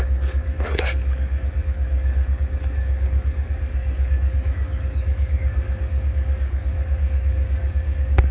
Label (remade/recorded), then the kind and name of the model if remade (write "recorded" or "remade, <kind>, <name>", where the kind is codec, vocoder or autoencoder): remade, codec, DAC